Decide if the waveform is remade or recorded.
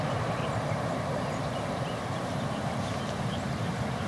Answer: remade